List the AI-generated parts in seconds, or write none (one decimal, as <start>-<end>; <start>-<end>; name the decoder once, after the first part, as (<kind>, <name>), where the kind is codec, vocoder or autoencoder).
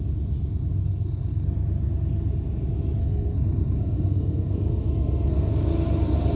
0.8-1.5 (codec, SNAC); 3.0-5.5